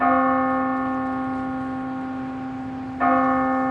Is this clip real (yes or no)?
yes